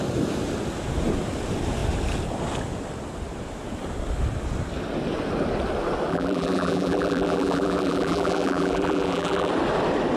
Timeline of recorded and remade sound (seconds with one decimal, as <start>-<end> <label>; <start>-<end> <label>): 0.0-6.1 recorded; 6.1-9.5 remade; 9.5-10.2 recorded